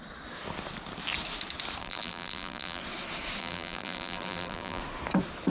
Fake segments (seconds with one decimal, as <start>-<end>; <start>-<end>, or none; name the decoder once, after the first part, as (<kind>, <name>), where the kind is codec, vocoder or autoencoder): 1.8-2.8 (vocoder, BigVGAN v2); 3.4-4.8